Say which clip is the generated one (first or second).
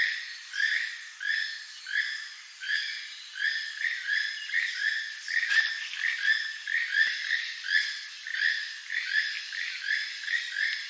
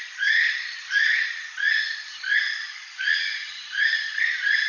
second